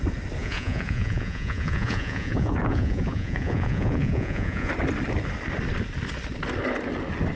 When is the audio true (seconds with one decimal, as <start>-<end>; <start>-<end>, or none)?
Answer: 0.0-0.4; 4.7-7.4